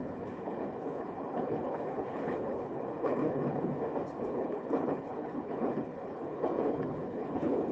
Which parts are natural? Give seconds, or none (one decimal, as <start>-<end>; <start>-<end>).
3.7-4.2